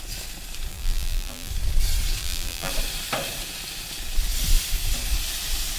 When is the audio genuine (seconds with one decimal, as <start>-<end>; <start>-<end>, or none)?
0.0-0.7; 1.5-2.2; 2.7-5.8